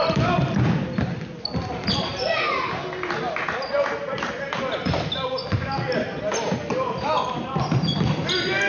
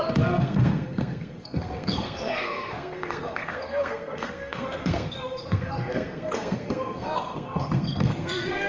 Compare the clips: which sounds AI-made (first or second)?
second